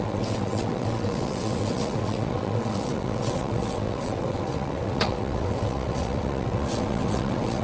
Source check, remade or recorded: remade